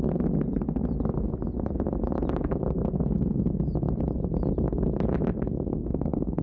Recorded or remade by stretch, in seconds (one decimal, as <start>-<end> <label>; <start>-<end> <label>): 0.0-5.8 recorded; 5.8-6.4 remade